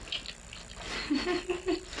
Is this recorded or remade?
recorded